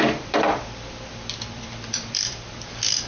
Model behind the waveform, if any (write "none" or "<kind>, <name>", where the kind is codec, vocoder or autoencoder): vocoder, BigVGAN v2